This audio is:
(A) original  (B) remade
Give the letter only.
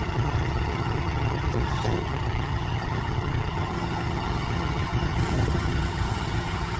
B